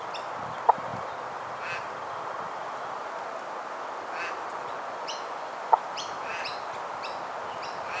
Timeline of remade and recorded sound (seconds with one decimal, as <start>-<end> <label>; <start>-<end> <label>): 0.0-4.5 recorded; 4.5-5.8 remade; 5.8-8.0 recorded